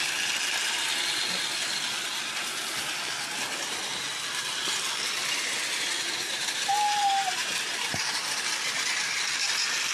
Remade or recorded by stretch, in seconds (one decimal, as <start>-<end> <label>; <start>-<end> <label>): 0.0-5.2 recorded; 5.2-8.6 remade; 8.6-9.9 recorded

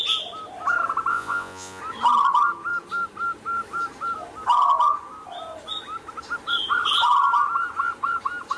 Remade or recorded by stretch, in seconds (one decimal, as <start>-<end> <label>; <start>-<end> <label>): 0.0-1.1 recorded; 1.1-1.8 remade; 1.8-8.6 recorded